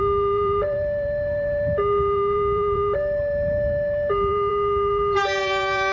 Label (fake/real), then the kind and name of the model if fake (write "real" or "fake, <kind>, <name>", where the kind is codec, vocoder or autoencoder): fake, vocoder, BigVGAN v2